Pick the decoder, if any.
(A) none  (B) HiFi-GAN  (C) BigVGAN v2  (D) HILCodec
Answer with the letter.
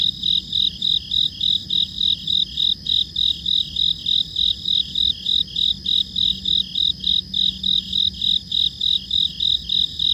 A